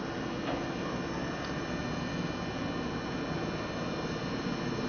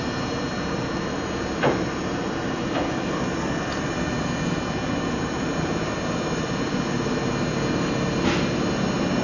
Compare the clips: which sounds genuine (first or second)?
first